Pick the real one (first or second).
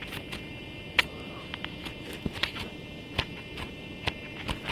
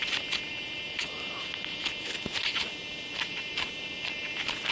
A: first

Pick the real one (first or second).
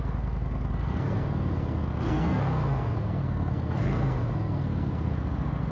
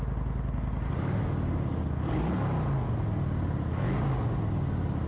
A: second